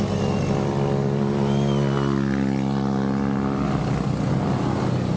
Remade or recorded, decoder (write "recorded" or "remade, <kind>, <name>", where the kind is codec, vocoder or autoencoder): recorded